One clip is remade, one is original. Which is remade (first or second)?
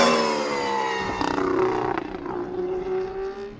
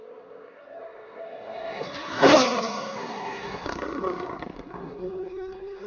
second